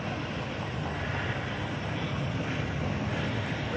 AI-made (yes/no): no